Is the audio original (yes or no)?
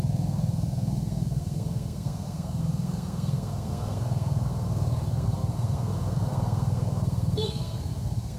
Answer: no